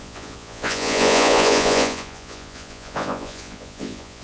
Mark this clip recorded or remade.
remade